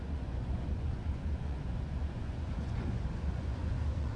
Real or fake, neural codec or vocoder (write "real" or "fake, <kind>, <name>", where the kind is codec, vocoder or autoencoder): fake, vocoder, Vocos